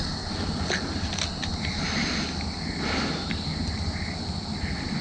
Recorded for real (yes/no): yes